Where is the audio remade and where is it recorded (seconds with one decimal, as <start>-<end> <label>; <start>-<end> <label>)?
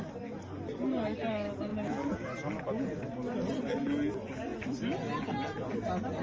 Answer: 0.0-6.2 recorded